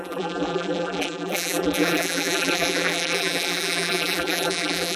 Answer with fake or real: fake